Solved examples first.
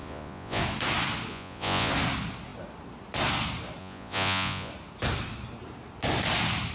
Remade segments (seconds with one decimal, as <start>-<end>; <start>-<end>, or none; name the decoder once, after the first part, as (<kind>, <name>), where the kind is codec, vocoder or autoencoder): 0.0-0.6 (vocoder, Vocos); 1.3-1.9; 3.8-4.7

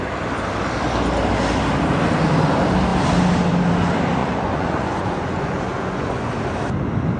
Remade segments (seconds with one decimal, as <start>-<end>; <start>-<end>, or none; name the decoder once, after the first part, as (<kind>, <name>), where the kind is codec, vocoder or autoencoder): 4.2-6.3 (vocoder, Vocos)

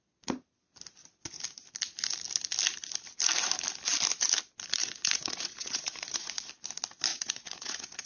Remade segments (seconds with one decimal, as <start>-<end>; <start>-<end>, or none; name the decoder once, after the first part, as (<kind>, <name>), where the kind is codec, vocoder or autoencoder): 4.8-6.5 (vocoder, Vocos); 7.1-8.1

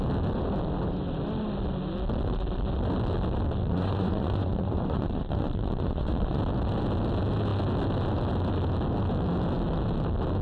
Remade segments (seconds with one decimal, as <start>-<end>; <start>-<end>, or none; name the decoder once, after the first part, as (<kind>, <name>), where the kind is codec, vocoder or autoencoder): 3.6-6.4 (vocoder, Vocos)

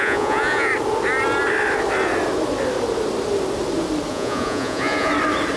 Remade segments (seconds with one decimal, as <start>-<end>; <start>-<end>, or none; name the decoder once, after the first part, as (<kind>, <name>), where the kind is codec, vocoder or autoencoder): 0.0-0.7 (vocoder, Vocos); 4.1-5.1

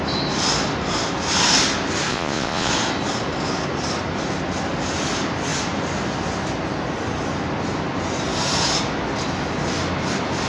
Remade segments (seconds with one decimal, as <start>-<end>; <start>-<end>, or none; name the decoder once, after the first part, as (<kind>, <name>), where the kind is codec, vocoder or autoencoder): 2.1-2.7 (vocoder, Vocos)

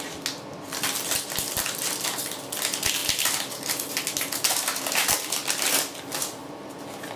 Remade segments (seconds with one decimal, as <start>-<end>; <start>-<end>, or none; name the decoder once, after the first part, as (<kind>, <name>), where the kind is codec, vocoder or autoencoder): none

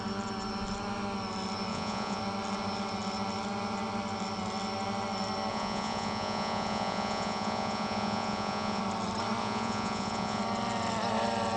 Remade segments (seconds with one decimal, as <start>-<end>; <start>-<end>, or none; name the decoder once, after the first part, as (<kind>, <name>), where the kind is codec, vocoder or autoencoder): 1.7-2.2 (vocoder, Vocos); 5.5-8.8; 9.4-10.4